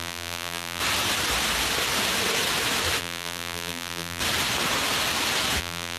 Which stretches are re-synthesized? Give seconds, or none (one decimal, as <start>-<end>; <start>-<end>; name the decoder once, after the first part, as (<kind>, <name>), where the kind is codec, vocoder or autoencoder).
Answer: 0.0-0.8 (vocoder, BigVGAN v2); 3.0-4.2; 5.6-6.0